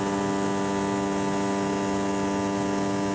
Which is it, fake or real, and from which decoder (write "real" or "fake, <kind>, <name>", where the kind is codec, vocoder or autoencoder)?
real